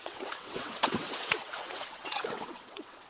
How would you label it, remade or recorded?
remade